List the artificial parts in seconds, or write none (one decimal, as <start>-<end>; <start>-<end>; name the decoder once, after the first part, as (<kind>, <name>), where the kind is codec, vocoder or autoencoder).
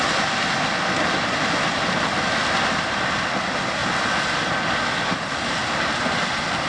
3.8-4.9 (vocoder, BigVGAN v2)